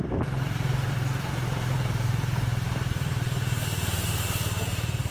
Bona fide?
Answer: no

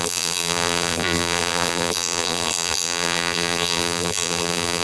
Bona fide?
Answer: no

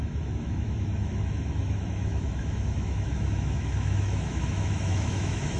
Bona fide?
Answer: no